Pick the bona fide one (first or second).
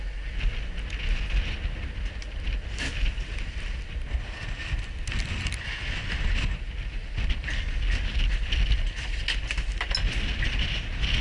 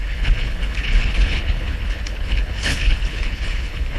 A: first